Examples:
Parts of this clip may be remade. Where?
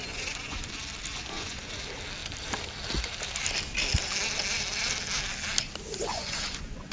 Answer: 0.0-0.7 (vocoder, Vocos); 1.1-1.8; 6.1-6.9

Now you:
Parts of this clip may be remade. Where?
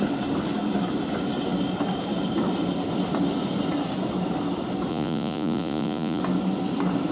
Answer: 4.9-6.2 (vocoder, Vocos)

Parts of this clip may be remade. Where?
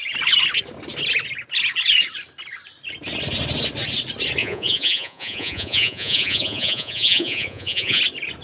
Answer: 4.4-8.0 (vocoder, Vocos)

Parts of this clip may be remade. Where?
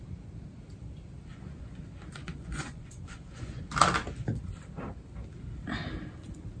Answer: 1.3-1.8 (vocoder, Vocos); 2.2-3.6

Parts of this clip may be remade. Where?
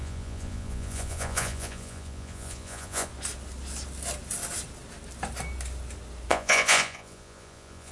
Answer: 0.0-3.1 (vocoder, Vocos); 6.3-7.9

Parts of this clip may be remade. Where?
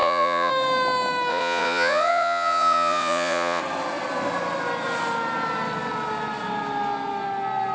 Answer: 0.0-0.5 (vocoder, Vocos); 1.3-3.6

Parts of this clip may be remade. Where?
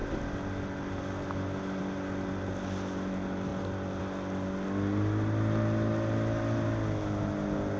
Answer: none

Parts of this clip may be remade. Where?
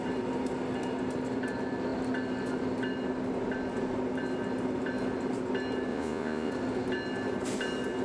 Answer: 5.9-6.5 (vocoder, Vocos)